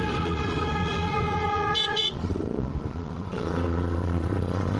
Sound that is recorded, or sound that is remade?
remade